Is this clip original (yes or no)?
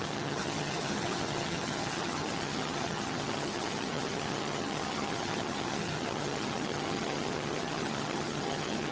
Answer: no